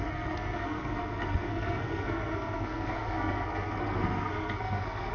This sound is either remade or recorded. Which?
remade